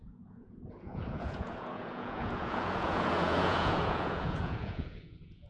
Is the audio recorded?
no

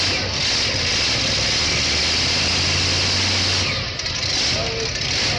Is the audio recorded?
yes